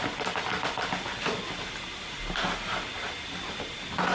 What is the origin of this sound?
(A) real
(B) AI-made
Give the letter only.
A